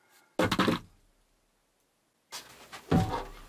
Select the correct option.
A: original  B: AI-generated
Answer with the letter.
A